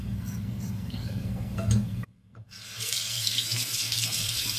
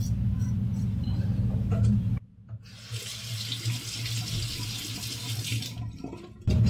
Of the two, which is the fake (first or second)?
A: first